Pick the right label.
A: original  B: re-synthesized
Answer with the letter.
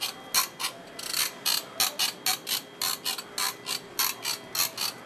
A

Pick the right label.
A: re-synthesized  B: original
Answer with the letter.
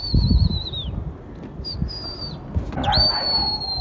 B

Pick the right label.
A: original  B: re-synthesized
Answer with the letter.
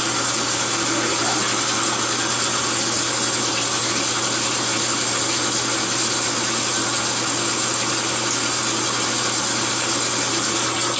A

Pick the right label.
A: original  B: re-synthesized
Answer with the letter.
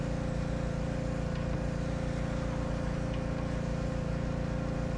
A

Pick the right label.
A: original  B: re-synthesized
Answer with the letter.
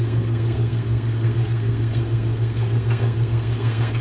B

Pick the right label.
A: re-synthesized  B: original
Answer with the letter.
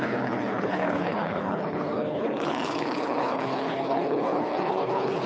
A